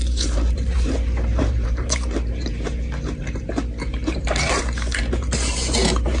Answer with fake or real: fake